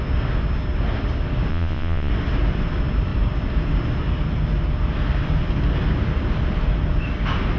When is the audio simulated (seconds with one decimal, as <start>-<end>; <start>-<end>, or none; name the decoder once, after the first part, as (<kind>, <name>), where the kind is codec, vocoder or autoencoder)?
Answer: 1.5-2.1 (vocoder, Vocos)